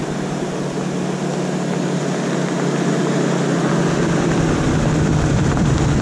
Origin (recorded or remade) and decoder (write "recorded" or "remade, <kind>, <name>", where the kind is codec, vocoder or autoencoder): recorded